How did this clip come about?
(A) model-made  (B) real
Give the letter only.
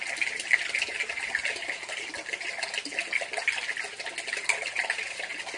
B